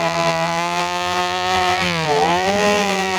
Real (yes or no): no